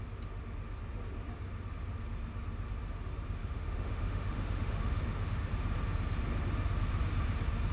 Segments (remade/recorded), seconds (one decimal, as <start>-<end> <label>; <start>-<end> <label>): 0.0-3.4 recorded; 3.4-5.5 remade; 5.5-7.7 recorded

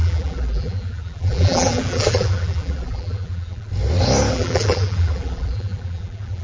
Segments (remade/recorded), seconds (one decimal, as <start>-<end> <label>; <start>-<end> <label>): 0.0-3.7 remade; 3.7-4.3 recorded; 4.3-6.4 remade

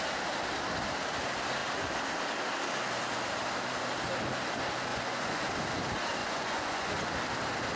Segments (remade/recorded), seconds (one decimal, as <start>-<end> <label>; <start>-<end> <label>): 0.0-4.9 recorded; 4.9-5.4 remade; 5.4-6.2 recorded; 6.2-7.1 remade; 7.1-7.8 recorded

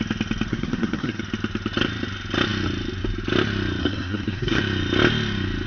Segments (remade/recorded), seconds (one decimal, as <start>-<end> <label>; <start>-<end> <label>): 0.0-0.5 recorded; 0.5-1.2 remade; 1.2-3.8 recorded; 3.8-4.6 remade; 4.6-5.7 recorded

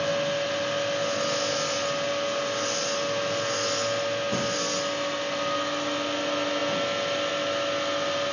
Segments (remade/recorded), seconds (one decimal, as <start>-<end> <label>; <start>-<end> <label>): 0.0-8.3 recorded

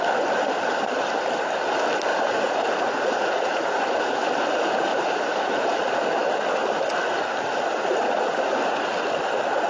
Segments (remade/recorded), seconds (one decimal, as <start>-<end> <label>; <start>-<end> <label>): 0.0-2.1 recorded; 2.1-3.8 remade; 3.8-4.9 recorded; 4.9-5.8 remade; 5.8-9.7 recorded